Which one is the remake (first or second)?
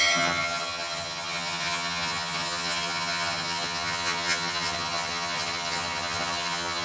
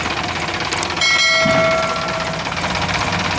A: first